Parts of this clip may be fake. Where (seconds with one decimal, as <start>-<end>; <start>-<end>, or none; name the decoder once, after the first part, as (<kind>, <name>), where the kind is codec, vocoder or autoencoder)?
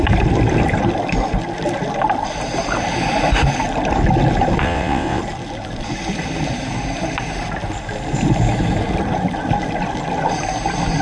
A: 4.6-5.2 (vocoder, WaveNeXt)